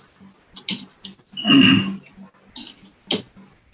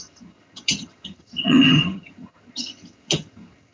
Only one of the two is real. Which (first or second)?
first